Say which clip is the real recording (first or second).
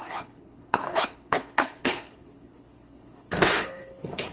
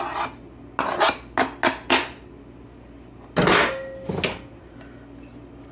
second